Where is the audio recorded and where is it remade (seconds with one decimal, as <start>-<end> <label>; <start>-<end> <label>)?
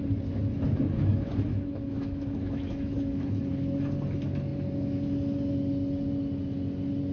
0.0-1.1 recorded; 1.1-3.4 remade; 3.4-7.1 recorded